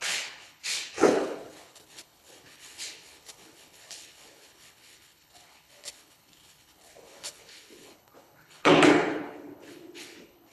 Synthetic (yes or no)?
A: yes